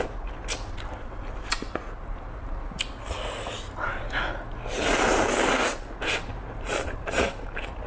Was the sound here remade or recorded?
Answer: recorded